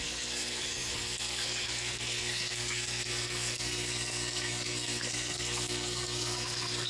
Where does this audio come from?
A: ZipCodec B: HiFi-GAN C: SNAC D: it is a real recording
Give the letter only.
C